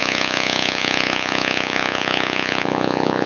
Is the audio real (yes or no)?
no